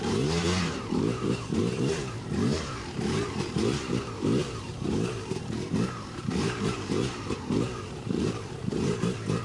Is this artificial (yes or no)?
yes